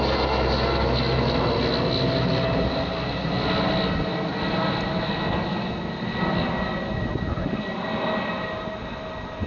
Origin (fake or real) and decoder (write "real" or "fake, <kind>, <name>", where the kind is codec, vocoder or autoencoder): real